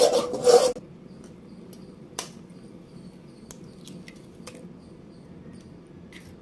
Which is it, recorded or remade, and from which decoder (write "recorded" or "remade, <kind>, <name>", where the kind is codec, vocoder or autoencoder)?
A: recorded